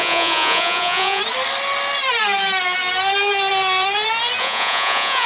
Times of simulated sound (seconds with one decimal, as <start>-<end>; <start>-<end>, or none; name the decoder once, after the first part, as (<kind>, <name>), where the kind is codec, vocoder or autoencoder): 0.0-1.2 (vocoder, Vocos); 4.4-5.3